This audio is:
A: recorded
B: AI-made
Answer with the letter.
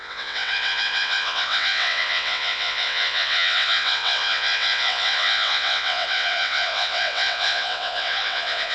B